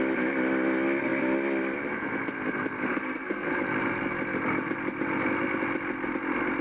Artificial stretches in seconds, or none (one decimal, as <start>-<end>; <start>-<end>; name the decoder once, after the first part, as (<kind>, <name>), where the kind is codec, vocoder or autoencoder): 2.9-3.5 (codec, SNAC)